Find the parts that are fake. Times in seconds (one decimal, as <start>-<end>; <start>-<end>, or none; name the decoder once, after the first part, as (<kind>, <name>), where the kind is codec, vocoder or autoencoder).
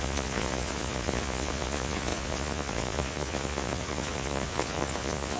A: 0.0-5.4 (vocoder, Vocos)